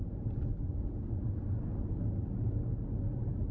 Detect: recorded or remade recorded